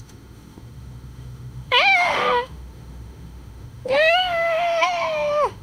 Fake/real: fake